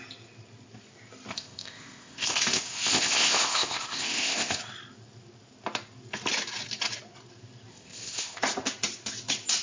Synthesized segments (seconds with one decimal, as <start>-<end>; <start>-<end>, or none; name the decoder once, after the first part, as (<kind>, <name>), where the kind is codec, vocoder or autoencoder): 1.3-4.6 (codec, ZipCodec); 7.7-8.4